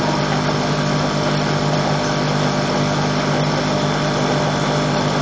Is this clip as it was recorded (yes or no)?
yes